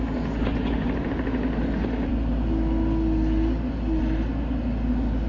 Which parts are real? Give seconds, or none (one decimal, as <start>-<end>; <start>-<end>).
0.0-5.3